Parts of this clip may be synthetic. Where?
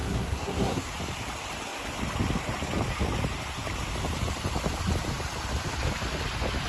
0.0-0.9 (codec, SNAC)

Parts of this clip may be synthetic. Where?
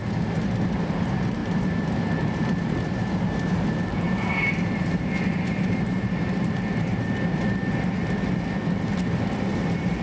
0.7-8.0 (vocoder, BigVGAN v2); 8.7-10.0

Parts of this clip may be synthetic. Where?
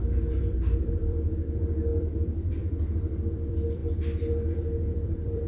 0.0-3.8 (vocoder, BigVGAN v2); 4.5-5.5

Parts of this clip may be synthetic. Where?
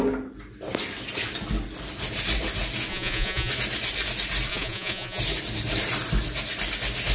2.9-3.5 (vocoder, Vocos); 4.5-5.2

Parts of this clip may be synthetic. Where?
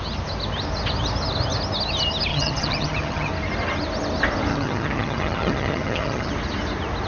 2.3-3.3 (vocoder, HiFi-GAN); 4.5-6.3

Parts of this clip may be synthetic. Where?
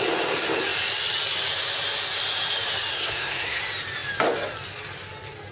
2.9-3.6 (codec, SNAC)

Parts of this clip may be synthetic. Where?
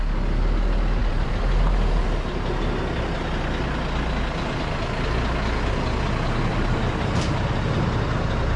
1.0-2.5 (vocoder, BigVGAN v2); 6.5-7.2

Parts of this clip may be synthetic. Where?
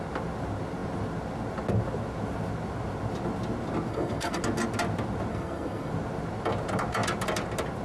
3.9-4.4 (codec, SNAC); 5.3-5.9